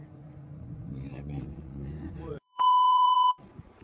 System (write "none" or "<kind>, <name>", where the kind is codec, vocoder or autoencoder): vocoder, Vocos